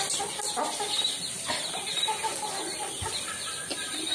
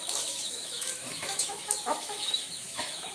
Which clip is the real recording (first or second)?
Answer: first